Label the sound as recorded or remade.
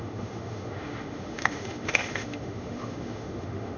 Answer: remade